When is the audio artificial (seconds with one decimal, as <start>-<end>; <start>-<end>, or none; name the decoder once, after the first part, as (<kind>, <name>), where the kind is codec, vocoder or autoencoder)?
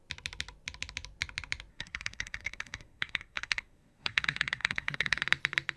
1.7-5.2 (codec, SNAC)